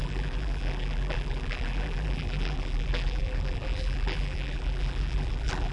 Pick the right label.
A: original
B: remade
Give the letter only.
B